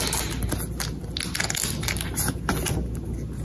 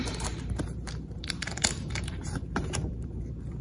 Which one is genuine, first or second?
first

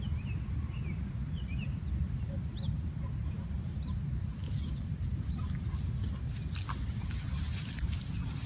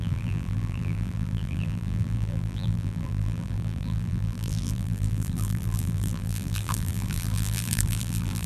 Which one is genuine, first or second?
first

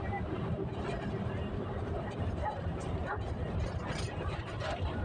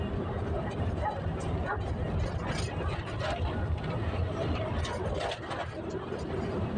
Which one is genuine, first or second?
second